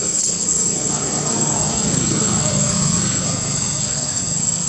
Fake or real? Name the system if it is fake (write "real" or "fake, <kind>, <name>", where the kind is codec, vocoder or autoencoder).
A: fake, codec, SNAC